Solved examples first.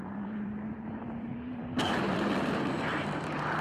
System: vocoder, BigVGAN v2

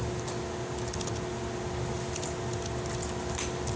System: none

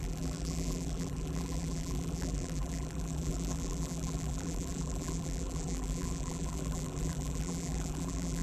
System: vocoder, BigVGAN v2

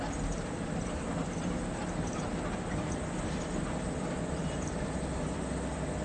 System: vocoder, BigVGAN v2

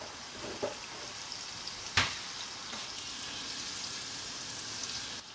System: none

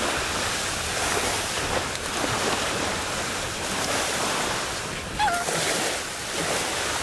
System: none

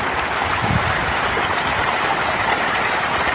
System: vocoder, BigVGAN v2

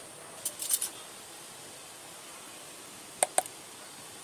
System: none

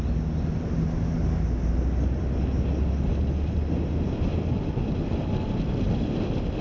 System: none